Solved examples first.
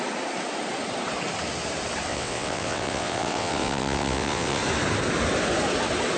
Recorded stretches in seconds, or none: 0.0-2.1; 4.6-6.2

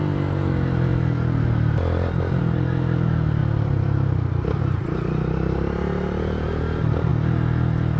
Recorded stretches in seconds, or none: 0.0-8.0

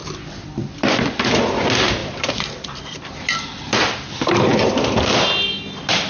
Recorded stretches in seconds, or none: 1.2-2.0; 2.8-4.5; 5.1-6.1

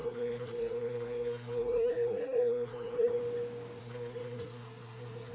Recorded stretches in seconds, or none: 3.2-3.8

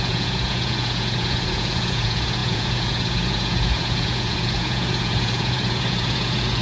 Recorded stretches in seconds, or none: none

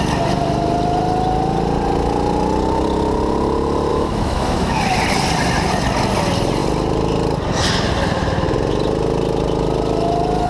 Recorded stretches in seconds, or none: 0.0-3.9; 4.8-10.5

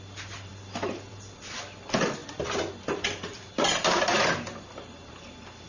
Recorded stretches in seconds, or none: 0.0-5.7